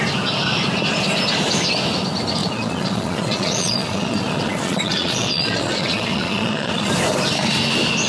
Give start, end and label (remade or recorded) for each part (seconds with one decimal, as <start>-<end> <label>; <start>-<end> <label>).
0.0-2.4 recorded; 2.4-6.9 remade; 6.9-8.1 recorded